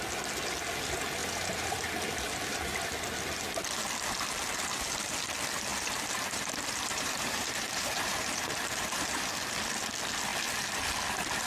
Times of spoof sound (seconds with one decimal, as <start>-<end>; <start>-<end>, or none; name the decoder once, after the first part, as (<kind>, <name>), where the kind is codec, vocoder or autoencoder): 1.2-1.8 (vocoder, BigVGAN v2); 5.7-9.3